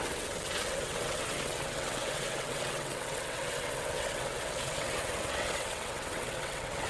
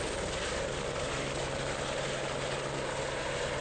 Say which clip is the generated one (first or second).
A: first